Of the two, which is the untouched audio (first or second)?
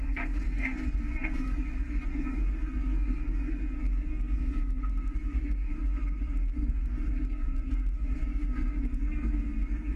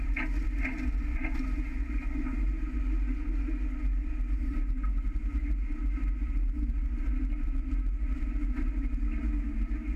second